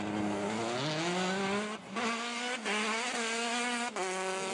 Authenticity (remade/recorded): recorded